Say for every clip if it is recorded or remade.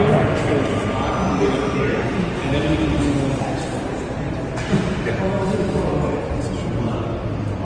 recorded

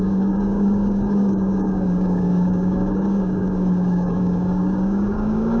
remade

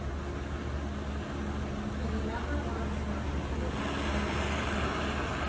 recorded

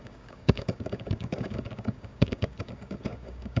remade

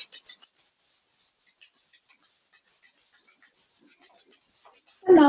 recorded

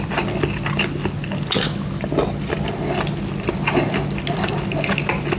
recorded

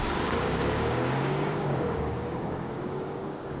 remade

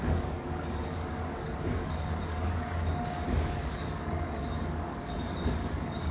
remade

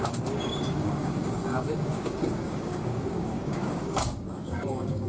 remade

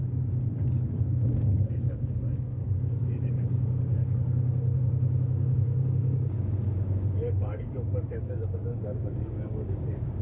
remade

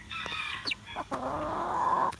remade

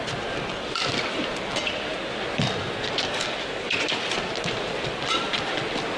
recorded